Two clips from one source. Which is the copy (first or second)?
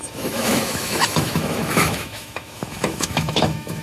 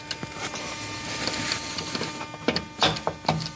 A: first